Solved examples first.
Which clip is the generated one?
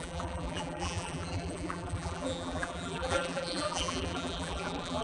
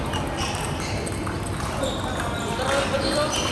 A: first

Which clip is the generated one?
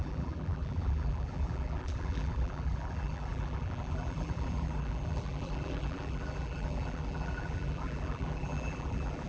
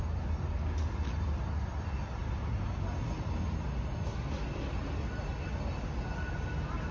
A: first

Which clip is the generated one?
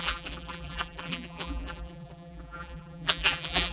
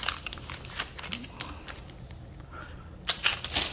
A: first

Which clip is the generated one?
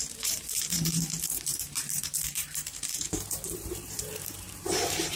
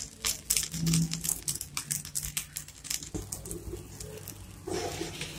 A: first